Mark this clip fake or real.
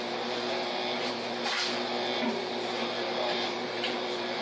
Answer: fake